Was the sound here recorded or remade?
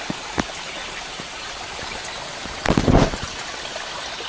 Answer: recorded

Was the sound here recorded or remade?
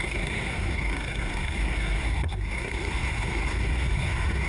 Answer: remade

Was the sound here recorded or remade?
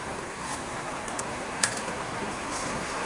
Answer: remade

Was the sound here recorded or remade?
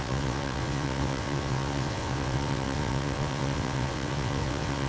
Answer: remade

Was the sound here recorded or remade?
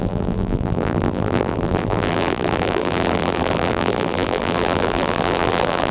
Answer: remade